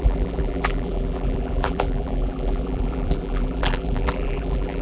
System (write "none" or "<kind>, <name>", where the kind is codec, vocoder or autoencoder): vocoder, BigVGAN v2